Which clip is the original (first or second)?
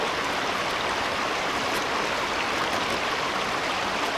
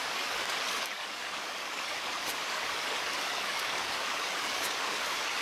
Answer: first